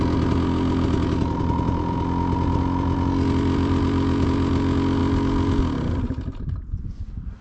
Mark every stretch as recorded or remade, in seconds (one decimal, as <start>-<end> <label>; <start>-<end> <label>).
0.0-7.4 recorded